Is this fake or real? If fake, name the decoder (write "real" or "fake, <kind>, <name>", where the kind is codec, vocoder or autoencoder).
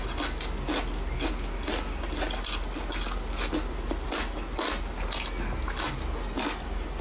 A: real